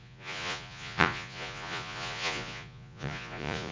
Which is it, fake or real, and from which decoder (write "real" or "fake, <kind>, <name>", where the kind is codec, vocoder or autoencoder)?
fake, vocoder, Vocos